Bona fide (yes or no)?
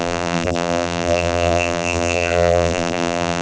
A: no